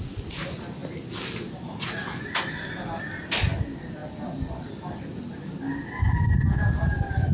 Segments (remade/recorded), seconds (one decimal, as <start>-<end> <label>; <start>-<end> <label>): 0.0-7.3 recorded